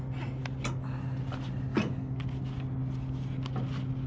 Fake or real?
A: real